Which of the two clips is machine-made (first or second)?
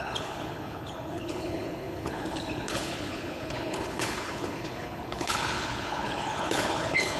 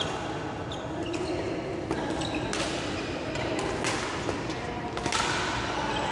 first